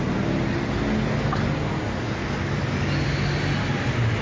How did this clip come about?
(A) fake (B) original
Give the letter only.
B